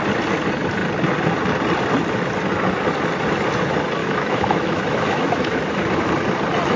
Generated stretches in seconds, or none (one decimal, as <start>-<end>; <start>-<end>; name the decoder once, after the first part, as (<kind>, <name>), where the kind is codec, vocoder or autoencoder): 4.0-6.1 (autoencoder, DAC-VAE)